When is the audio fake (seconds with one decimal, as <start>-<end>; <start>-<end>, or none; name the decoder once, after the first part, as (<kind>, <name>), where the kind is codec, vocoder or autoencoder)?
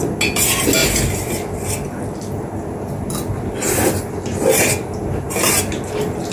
none